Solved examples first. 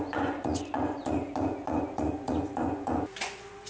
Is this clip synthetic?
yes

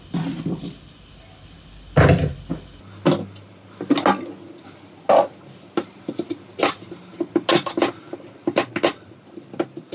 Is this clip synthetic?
no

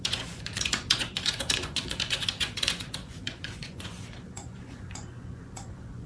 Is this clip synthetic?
yes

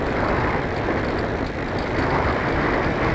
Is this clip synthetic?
no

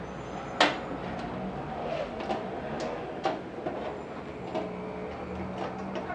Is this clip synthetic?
no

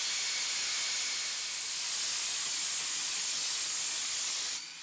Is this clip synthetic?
no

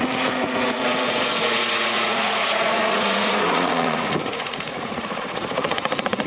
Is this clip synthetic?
yes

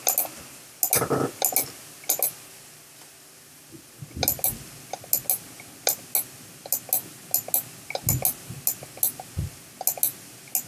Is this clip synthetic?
no